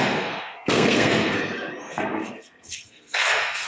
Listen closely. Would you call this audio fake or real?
fake